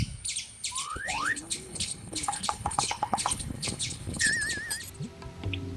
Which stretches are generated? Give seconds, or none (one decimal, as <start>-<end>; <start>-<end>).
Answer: 0.8-4.3